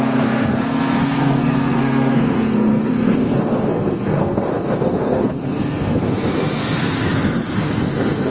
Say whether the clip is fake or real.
fake